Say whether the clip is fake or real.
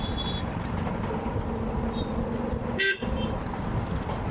real